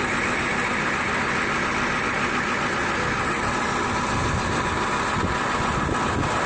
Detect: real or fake real